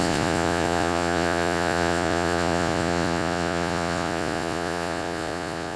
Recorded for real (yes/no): no